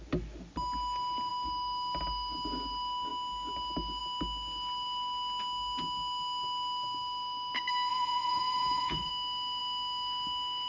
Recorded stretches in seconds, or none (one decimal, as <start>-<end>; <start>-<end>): 0.0-7.9; 9.1-10.7